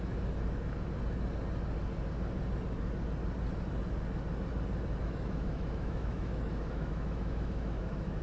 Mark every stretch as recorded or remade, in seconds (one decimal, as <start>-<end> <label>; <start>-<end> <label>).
0.0-5.0 recorded; 5.0-8.2 remade